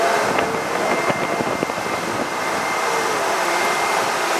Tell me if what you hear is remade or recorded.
recorded